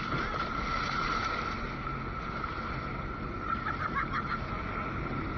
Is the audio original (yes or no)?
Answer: yes